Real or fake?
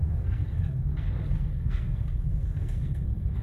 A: fake